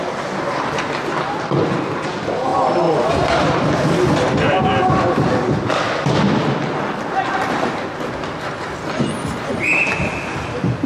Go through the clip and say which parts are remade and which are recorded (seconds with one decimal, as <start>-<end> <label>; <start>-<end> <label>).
0.0-10.9 recorded